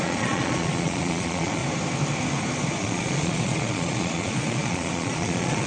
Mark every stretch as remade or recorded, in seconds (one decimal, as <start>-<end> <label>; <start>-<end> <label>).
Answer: 0.0-1.6 remade; 1.6-2.8 recorded; 2.8-5.7 remade